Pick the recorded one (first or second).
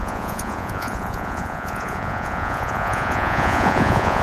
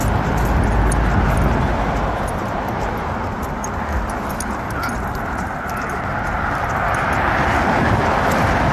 second